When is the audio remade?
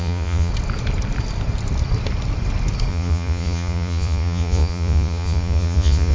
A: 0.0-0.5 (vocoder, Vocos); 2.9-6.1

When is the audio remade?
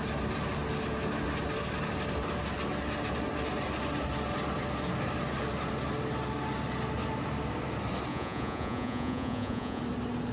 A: 8.1-9.8 (vocoder, Vocos)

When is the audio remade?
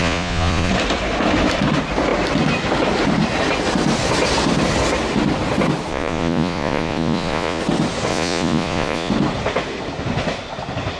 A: 0.0-0.7 (vocoder, Vocos); 5.9-7.6; 8.1-9.1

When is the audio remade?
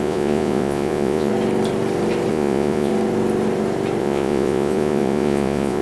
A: 0.0-1.3 (vocoder, Vocos); 2.3-2.9; 4.0-5.8